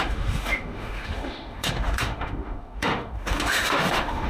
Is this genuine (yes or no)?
no